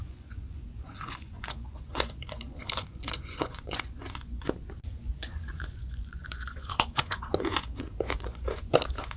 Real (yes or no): no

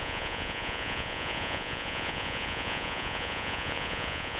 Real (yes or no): no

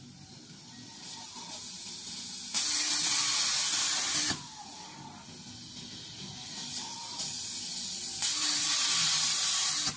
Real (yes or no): yes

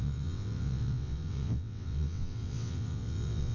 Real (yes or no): no